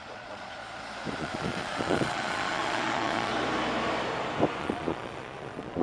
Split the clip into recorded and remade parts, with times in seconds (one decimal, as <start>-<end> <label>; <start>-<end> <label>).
0.0-0.6 remade; 0.6-1.2 recorded; 1.2-3.3 remade; 3.3-4.6 recorded; 4.6-5.8 remade